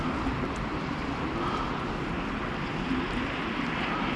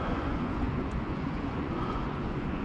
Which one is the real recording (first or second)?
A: first